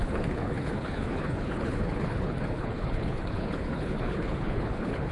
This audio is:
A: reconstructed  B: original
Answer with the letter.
A